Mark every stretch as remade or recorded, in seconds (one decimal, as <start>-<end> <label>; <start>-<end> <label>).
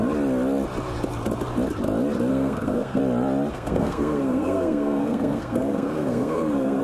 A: 0.0-2.3 recorded; 2.3-3.0 remade; 3.0-3.5 recorded; 3.5-6.8 remade